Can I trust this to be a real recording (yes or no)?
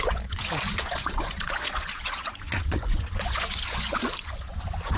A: no